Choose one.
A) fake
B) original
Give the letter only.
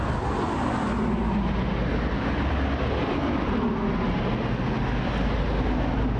B